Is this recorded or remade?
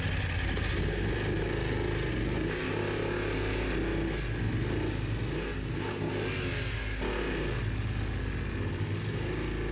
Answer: recorded